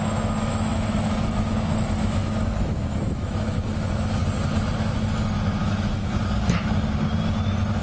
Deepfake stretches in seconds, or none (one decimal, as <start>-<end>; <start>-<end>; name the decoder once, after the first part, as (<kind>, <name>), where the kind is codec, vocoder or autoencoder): 0.5-4.2 (autoencoder, DAC-VAE); 5.6-6.2